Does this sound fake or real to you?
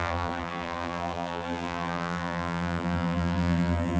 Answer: fake